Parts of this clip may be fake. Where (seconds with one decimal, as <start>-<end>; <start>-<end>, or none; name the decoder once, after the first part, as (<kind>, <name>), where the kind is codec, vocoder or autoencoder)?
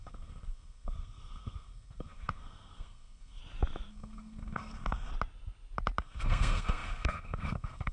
0.0-3.4 (codec, SNAC); 3.9-5.1; 6.0-7.9